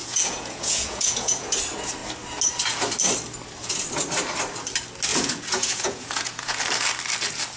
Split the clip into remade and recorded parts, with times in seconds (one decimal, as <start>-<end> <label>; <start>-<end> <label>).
0.0-1.6 remade; 1.6-5.1 recorded; 5.1-6.6 remade; 6.6-7.6 recorded